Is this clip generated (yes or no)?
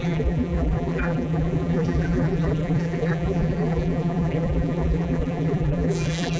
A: yes